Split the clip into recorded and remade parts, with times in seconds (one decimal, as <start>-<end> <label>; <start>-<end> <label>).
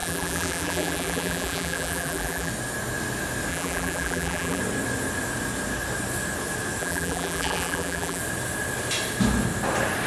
0.0-2.5 remade; 2.5-3.5 recorded; 3.5-4.6 remade; 4.6-6.8 recorded; 6.8-8.2 remade; 8.2-10.1 recorded